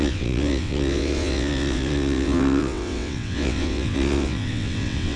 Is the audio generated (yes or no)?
yes